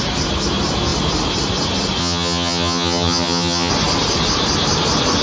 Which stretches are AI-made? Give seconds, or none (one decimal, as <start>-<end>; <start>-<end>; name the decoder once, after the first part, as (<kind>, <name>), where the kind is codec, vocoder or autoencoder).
2.0-3.7 (vocoder, HiFi-GAN)